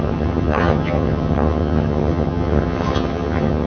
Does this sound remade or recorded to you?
remade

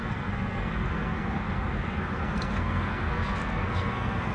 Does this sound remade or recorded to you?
remade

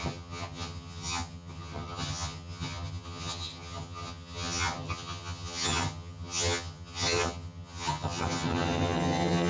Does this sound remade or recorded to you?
remade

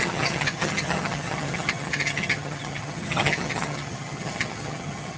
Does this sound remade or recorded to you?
remade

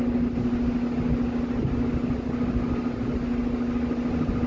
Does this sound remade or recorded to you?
recorded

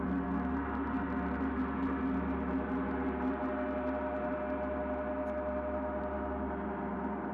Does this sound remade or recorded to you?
recorded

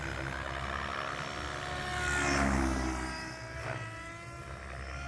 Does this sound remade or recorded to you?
recorded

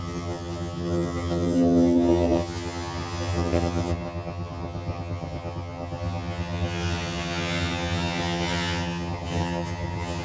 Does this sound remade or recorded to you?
remade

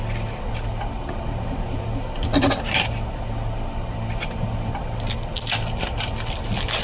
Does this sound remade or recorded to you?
recorded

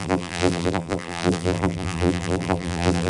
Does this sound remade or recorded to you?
remade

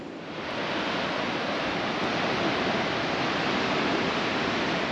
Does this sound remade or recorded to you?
recorded